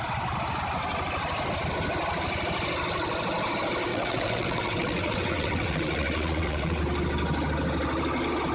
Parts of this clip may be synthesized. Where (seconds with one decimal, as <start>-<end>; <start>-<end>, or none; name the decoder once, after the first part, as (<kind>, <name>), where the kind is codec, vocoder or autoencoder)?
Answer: 3.9-6.8 (vocoder, WaveNeXt)